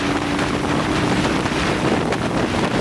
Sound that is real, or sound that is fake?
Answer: real